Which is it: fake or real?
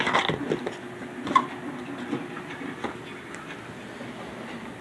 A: real